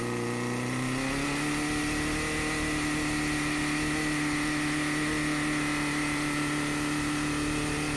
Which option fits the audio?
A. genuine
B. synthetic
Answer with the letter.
A